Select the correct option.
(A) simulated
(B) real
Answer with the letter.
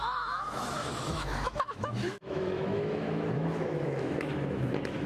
A